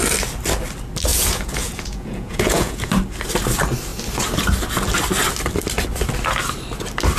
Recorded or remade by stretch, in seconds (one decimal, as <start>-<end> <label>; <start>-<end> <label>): 0.0-1.1 recorded; 1.1-2.9 remade; 2.9-7.2 recorded